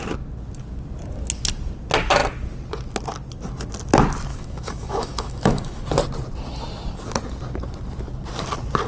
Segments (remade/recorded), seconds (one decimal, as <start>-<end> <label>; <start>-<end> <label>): 0.0-4.3 recorded; 4.3-5.8 remade; 5.8-8.9 recorded